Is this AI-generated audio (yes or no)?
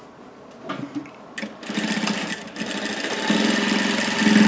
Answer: no